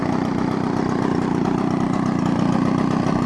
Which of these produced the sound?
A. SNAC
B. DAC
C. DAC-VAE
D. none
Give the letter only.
D